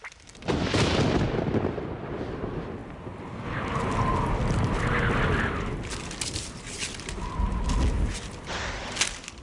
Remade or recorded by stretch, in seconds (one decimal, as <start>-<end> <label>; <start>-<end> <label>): 0.0-9.4 recorded